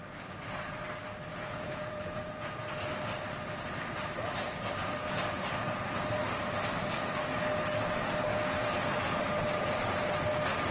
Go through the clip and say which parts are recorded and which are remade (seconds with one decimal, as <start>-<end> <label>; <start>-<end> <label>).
0.0-1.3 recorded; 1.3-2.6 remade; 2.6-10.7 recorded